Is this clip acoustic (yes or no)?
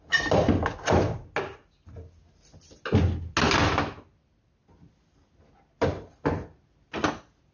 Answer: yes